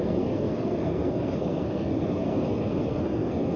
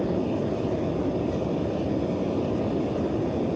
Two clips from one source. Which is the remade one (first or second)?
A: first